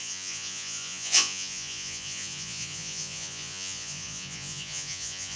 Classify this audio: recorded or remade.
remade